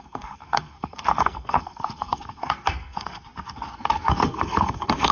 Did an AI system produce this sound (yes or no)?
yes